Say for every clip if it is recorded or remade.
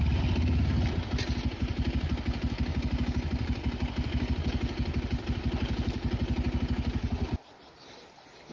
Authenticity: recorded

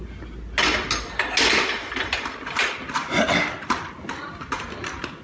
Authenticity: recorded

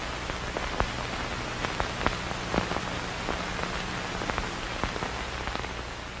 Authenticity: recorded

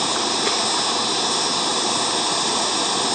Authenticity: recorded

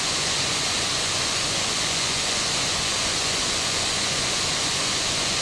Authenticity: remade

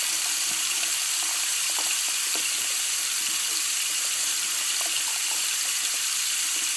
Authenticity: remade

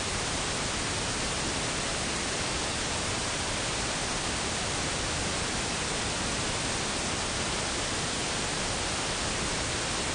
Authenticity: recorded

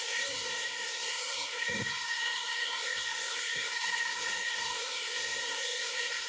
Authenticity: remade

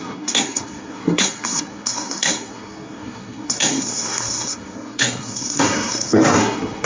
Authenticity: remade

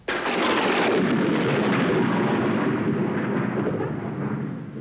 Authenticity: recorded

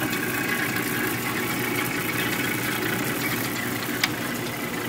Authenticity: recorded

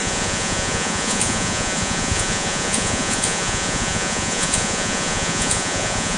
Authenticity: remade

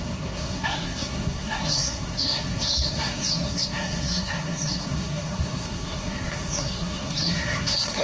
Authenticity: remade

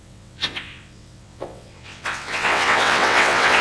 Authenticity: remade